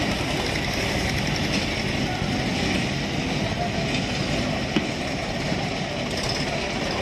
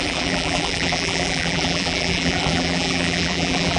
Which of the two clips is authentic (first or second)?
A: first